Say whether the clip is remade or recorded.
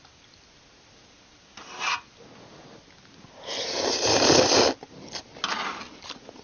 recorded